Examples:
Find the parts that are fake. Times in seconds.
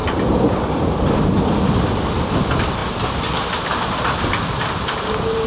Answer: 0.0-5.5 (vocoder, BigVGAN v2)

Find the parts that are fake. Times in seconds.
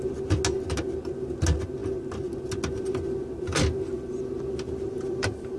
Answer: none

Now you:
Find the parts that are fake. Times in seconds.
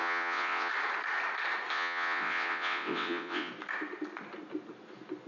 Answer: 0.0-0.7 (vocoder, WaveNeXt); 1.7-3.5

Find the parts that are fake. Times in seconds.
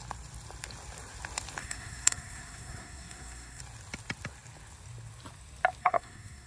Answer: 1.6-3.6 (codec, SNAC); 5.8-6.5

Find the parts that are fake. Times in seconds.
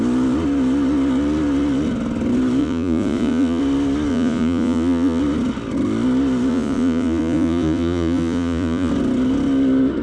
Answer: 2.6-3.6 (vocoder, Vocos); 4.1-5.2; 6.5-8.9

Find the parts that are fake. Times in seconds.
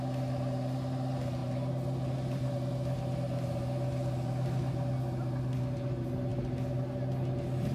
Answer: none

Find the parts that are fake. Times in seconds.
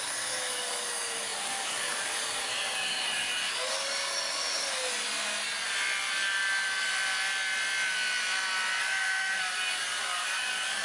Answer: 0.0-4.8 (codec, DAC); 8.8-10.8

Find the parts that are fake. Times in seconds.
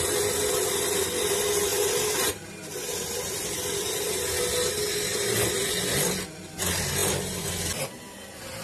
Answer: none